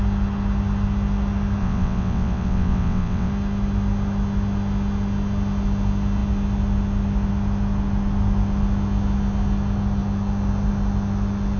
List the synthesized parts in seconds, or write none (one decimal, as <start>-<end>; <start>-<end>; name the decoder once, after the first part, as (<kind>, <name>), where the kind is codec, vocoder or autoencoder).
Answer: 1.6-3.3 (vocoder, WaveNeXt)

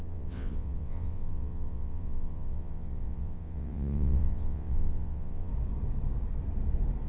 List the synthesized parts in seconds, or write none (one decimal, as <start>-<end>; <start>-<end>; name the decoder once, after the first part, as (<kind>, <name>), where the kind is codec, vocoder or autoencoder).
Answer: 0.0-5.5 (vocoder, WaveNeXt)

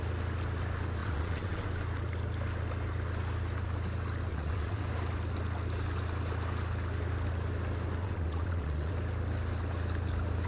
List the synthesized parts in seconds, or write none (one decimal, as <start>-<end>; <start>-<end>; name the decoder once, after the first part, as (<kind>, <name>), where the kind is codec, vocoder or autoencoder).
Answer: 1.0-1.7 (vocoder, WaveNeXt); 4.3-4.8; 8.0-8.9

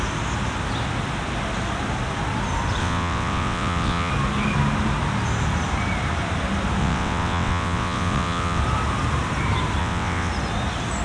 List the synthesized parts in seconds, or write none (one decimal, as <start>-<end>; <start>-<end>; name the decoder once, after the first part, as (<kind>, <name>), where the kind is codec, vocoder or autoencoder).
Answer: 2.8-4.1 (vocoder, WaveNeXt); 6.8-8.6; 9.8-10.3

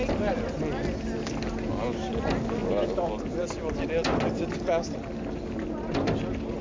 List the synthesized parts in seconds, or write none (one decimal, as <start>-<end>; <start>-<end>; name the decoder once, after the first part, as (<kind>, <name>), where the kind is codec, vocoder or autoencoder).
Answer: none

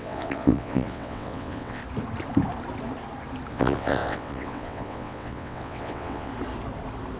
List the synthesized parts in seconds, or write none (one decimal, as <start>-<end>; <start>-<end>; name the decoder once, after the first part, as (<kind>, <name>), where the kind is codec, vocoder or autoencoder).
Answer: 0.0-1.8 (vocoder, WaveNeXt); 3.5-6.3

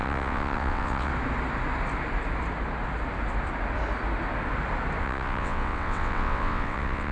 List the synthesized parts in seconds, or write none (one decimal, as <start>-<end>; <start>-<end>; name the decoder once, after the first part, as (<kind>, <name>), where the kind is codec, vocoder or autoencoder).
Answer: 0.0-1.1 (vocoder, WaveNeXt); 5.0-7.1

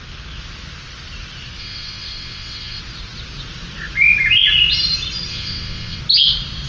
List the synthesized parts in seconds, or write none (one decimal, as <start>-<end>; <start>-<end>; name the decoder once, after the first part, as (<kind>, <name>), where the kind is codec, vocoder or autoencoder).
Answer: 1.6-2.8 (vocoder, WaveNeXt); 5.3-6.0